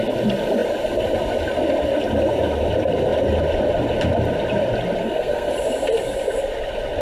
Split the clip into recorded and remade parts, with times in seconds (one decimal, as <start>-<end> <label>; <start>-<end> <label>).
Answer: 0.0-5.0 recorded; 5.0-5.5 remade; 5.5-7.0 recorded